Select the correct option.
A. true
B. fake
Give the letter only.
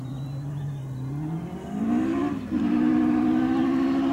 A